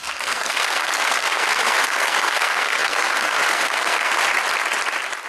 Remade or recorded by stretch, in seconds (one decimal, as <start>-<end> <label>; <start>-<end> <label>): 0.0-4.2 remade; 4.2-5.3 recorded